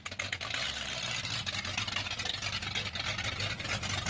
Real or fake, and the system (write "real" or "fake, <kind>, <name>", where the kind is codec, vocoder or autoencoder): real